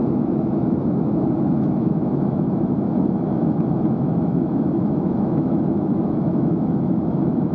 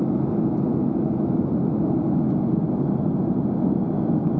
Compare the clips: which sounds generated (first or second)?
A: first